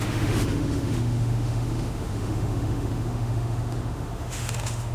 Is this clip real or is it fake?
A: fake